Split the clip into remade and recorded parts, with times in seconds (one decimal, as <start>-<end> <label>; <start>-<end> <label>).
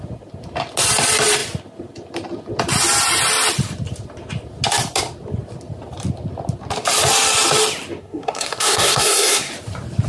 0.0-8.0 recorded; 8.0-9.5 remade; 9.5-10.1 recorded